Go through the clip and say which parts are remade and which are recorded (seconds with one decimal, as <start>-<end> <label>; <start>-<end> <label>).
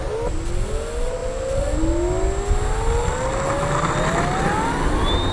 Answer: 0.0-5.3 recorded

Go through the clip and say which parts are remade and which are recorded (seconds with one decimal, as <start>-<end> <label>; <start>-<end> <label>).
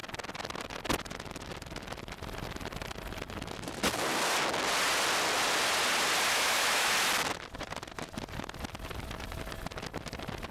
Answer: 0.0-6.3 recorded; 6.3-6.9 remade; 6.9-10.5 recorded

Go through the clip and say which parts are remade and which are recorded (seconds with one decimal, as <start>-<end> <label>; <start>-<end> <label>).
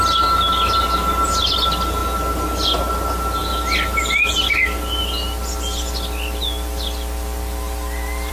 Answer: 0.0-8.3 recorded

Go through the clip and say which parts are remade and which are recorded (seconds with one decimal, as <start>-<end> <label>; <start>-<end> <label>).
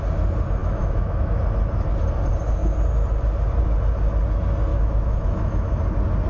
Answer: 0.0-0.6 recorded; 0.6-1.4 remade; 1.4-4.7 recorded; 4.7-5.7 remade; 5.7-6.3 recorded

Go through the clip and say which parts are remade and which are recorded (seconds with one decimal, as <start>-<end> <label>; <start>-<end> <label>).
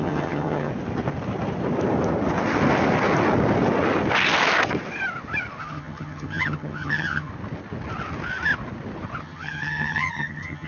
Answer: 0.0-0.7 remade; 0.7-5.6 recorded; 5.6-7.3 remade; 7.3-9.2 recorded; 9.2-10.7 remade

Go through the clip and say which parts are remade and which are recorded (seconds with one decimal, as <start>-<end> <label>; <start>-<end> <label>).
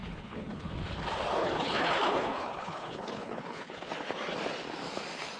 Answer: 0.0-0.7 remade; 0.7-1.4 recorded; 1.4-3.9 remade; 3.9-5.4 recorded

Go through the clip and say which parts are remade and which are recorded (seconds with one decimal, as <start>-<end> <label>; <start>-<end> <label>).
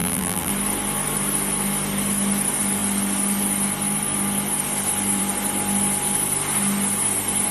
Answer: 0.0-0.5 remade; 0.5-7.5 recorded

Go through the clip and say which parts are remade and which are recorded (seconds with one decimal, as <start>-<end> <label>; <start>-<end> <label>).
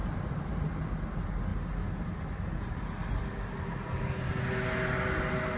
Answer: 0.0-5.6 recorded